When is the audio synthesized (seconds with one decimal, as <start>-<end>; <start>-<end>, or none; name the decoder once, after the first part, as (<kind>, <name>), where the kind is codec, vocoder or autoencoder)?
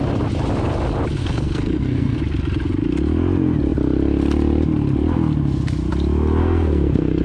1.2-2.2 (codec, SNAC); 6.4-7.2